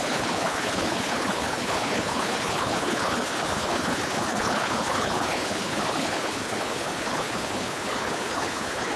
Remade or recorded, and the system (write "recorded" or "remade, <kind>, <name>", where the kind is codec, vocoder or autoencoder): remade, codec, HILCodec